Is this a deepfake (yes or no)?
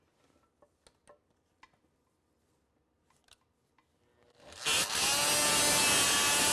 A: no